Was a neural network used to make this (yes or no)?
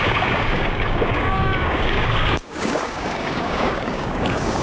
yes